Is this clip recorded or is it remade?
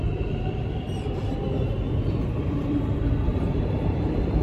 remade